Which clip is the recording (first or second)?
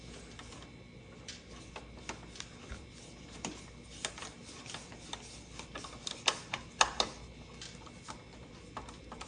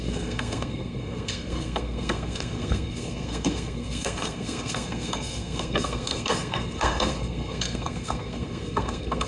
first